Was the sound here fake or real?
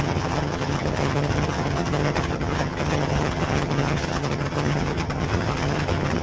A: fake